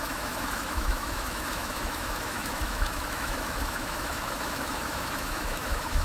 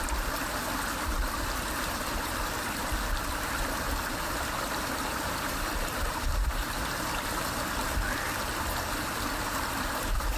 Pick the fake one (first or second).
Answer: first